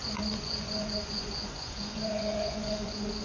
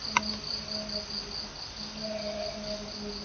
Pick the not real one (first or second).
first